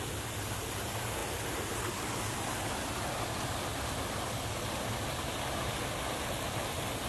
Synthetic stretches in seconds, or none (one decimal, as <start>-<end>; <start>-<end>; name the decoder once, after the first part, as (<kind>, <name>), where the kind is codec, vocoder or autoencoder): none